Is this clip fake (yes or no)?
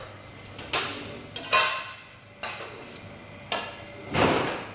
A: no